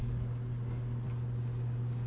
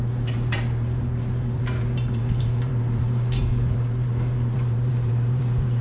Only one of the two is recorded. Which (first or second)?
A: first